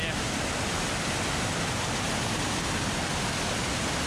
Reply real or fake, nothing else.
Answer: real